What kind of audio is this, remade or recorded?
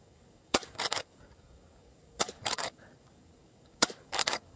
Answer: remade